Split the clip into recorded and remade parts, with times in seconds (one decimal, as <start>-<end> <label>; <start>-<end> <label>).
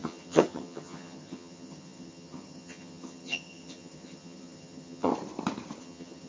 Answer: 0.0-5.1 remade; 5.1-5.8 recorded; 5.8-6.3 remade